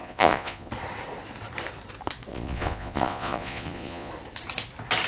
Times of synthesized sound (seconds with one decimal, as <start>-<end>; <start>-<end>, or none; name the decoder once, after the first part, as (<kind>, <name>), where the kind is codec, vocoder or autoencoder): 0.0-0.7 (vocoder, Vocos); 2.3-4.1